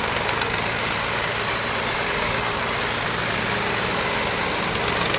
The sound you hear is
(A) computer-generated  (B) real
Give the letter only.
B